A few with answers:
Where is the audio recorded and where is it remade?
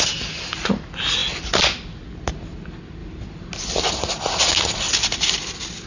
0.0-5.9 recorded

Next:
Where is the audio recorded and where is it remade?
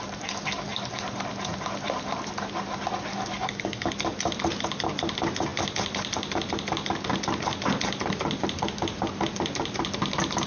0.0-3.1 recorded; 3.1-3.9 remade; 3.9-10.5 recorded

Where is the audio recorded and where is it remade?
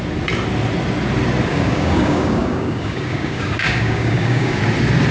0.0-1.5 recorded; 1.5-4.6 remade; 4.6-5.1 recorded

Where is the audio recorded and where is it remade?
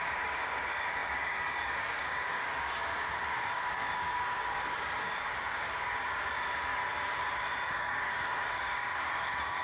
0.0-6.8 remade; 6.8-7.7 recorded; 7.7-9.6 remade